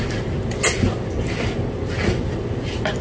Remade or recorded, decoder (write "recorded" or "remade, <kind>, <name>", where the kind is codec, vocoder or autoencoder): recorded